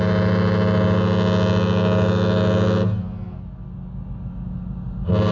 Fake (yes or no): no